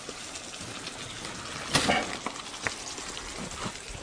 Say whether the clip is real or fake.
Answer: real